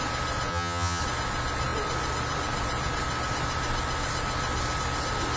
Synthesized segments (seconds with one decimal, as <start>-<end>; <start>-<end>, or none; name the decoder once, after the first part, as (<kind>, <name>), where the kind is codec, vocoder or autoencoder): 0.5-1.0 (vocoder, HiFi-GAN)